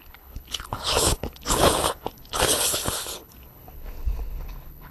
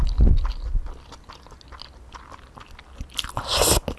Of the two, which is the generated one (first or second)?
first